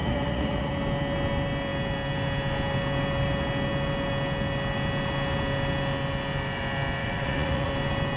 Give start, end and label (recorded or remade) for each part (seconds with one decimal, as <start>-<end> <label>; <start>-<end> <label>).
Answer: 0.0-0.7 remade; 0.7-7.0 recorded; 7.0-7.7 remade; 7.7-8.2 recorded